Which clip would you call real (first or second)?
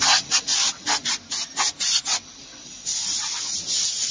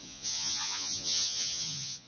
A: first